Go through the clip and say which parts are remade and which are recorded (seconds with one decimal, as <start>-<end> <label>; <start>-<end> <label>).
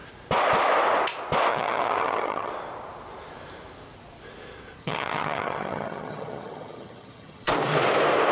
0.0-1.5 recorded; 1.5-2.5 remade; 2.5-4.8 recorded; 4.8-7.5 remade; 7.5-8.3 recorded